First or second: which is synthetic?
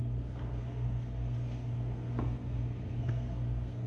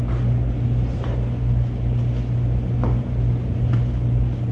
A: first